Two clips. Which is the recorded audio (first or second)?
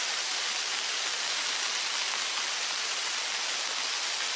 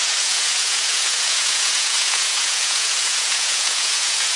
first